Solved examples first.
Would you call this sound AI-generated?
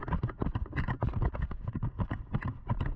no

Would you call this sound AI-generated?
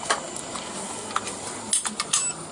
no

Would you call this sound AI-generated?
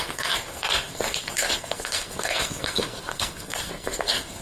yes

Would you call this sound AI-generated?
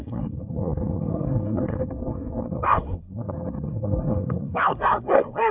yes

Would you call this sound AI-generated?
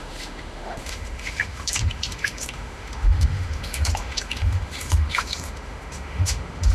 yes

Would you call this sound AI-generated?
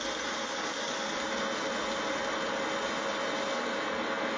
no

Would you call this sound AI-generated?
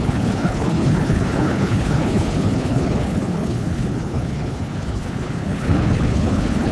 yes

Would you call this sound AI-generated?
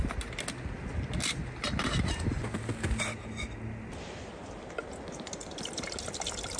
no